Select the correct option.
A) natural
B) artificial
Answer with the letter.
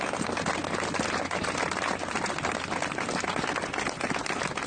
A